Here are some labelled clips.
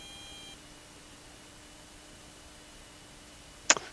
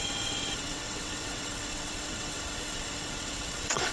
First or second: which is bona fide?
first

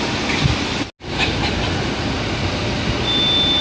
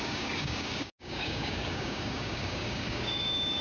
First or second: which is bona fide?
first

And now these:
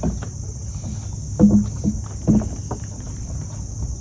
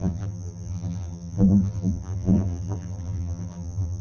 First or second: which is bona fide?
first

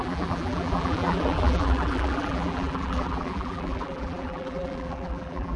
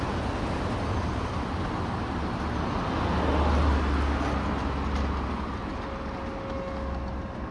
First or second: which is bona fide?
second